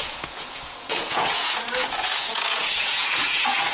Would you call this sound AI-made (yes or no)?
yes